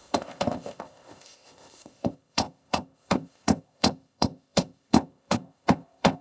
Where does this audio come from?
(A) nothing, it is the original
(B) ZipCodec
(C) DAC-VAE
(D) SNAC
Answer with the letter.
B